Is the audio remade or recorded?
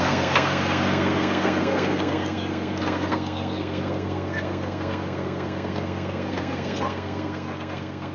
remade